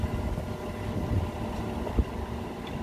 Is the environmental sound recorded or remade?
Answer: recorded